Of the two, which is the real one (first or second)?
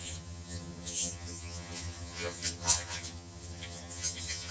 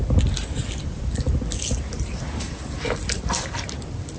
second